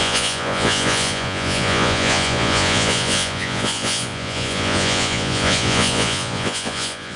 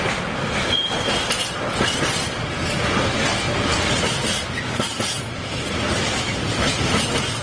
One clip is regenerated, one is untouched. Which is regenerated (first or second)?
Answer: first